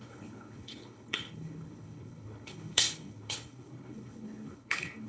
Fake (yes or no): yes